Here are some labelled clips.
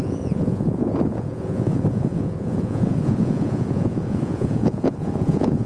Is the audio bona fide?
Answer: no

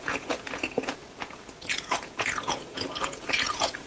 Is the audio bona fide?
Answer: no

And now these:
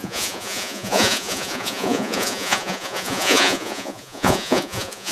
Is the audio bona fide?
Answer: no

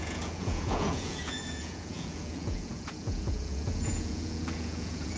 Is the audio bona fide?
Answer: no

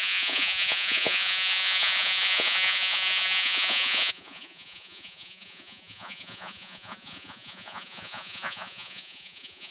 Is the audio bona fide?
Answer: no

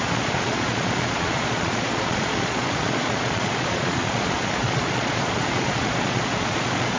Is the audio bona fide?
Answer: no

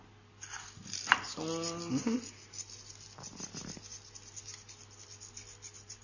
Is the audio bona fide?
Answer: yes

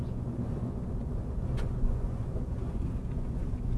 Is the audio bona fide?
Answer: no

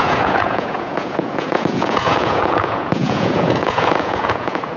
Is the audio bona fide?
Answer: no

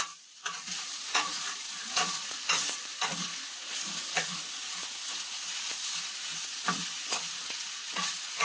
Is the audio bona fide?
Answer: no